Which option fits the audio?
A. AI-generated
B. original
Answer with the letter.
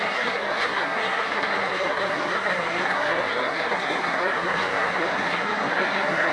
A